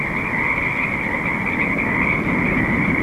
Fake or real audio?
real